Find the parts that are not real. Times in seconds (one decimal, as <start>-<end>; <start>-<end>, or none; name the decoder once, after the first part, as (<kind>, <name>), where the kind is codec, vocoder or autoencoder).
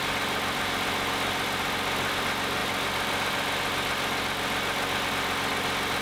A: none